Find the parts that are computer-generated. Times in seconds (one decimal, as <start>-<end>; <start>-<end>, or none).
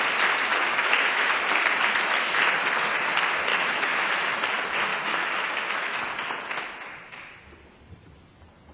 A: 0.5-1.3; 3.5-4.1; 4.9-6.0